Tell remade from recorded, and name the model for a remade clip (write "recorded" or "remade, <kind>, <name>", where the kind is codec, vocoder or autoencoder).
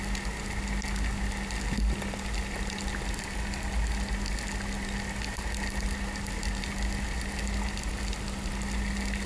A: recorded